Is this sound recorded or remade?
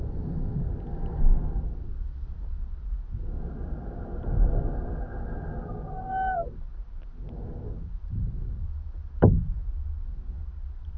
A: recorded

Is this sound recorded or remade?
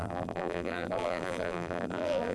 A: remade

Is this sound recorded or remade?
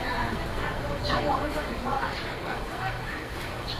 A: remade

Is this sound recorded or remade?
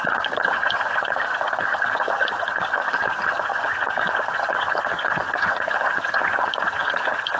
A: remade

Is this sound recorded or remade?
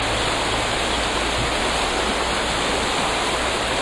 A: recorded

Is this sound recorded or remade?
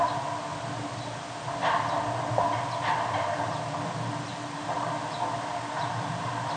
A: recorded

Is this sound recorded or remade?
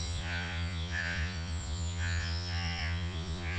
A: remade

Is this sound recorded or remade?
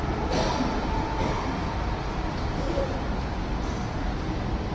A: recorded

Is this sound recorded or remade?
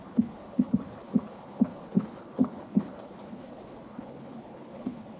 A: remade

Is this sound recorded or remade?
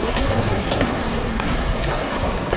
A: remade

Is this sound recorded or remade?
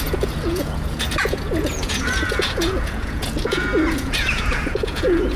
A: remade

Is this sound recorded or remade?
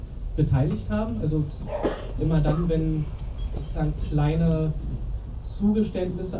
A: recorded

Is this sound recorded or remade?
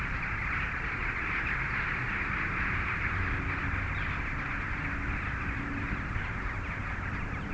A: recorded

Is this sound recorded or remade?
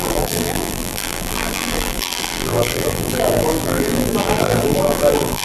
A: remade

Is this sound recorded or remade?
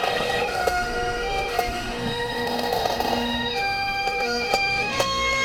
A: remade